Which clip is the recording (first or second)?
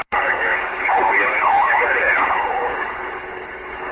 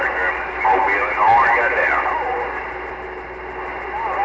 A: second